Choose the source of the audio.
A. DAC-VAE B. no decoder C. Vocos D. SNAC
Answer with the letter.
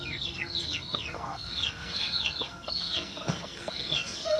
D